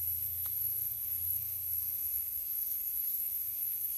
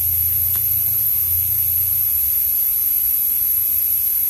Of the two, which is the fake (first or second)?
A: first